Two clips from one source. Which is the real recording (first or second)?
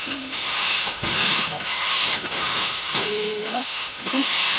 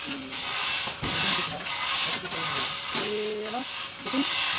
second